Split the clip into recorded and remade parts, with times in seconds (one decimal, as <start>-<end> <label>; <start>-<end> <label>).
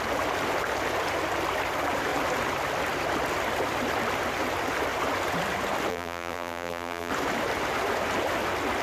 0.0-5.9 recorded; 5.9-7.1 remade; 7.1-8.8 recorded